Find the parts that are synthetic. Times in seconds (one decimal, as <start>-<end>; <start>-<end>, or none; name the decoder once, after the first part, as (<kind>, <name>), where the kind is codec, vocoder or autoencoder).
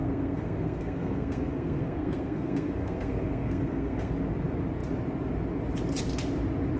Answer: 0.0-4.1 (codec, SNAC)